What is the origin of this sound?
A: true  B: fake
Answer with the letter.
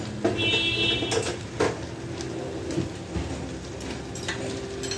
A